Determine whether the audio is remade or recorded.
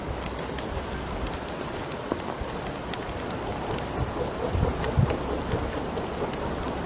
recorded